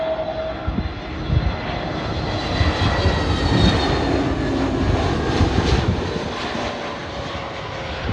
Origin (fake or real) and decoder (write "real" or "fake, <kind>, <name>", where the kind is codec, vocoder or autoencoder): real